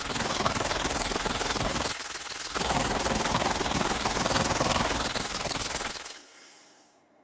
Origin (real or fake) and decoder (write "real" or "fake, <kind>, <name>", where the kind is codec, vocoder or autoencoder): fake, codec, SNAC